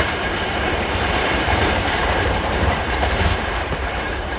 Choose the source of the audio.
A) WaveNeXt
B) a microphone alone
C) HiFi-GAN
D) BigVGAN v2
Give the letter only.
D